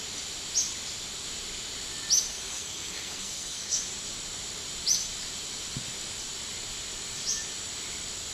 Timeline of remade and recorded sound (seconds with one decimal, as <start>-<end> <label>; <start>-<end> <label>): 0.0-2.3 recorded; 2.3-3.8 remade; 3.8-8.3 recorded

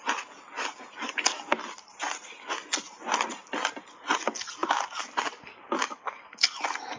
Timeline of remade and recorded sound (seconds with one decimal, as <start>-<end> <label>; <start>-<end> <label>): 0.0-7.0 recorded

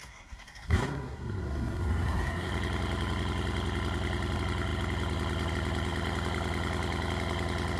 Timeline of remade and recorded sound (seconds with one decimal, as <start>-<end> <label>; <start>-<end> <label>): 0.0-2.5 remade; 2.5-7.8 recorded

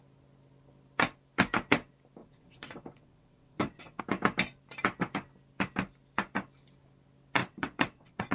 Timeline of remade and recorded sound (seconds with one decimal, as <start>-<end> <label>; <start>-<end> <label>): 0.0-2.2 recorded; 2.2-4.0 remade; 4.0-7.4 recorded; 7.4-8.3 remade